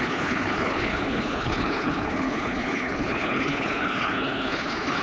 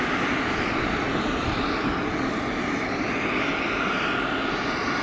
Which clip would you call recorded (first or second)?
second